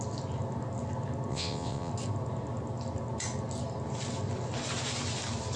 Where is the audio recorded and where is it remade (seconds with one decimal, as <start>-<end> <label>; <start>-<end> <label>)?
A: 0.0-1.3 recorded; 1.3-1.9 remade; 1.9-5.6 recorded